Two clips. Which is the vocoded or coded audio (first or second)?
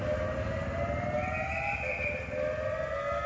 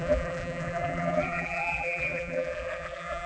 second